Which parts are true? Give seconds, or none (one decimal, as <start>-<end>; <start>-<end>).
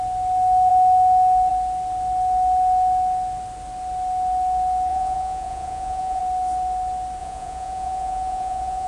0.0-4.9; 6.2-7.2